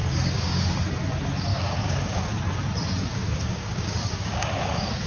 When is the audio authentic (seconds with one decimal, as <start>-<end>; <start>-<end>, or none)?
0.7-1.5; 2.2-3.1